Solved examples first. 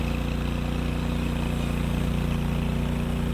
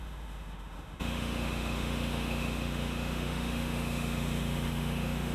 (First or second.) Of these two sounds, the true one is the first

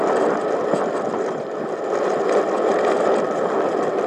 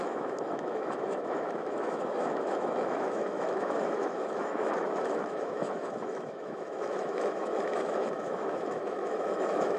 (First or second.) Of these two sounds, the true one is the first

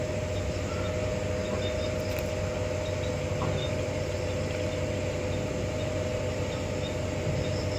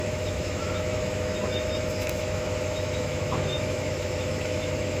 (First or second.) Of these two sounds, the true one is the first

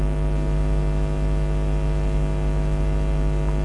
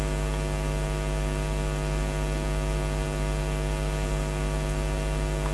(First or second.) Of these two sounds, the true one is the second